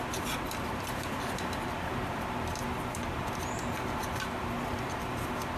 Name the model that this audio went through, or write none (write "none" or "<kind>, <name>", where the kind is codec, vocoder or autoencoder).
vocoder, BigVGAN v2